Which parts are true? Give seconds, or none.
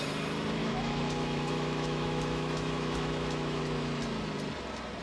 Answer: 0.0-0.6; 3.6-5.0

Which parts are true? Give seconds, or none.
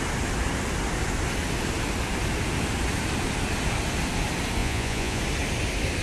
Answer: 0.0-4.6; 5.2-6.0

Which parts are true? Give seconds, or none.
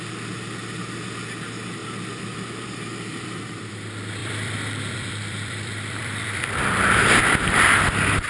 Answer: 0.0-1.8; 3.4-4.2; 7.2-8.3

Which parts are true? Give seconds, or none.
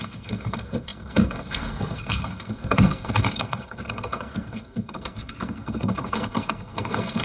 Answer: none